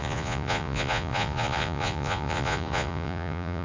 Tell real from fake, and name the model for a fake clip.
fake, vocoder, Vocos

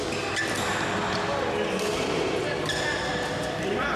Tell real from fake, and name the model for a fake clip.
real